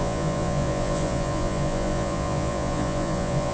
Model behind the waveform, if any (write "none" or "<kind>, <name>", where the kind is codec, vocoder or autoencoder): vocoder, Vocos